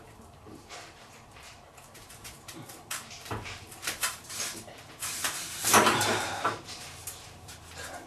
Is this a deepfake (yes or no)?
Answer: yes